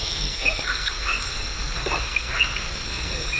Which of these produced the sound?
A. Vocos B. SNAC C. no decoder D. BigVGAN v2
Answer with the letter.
B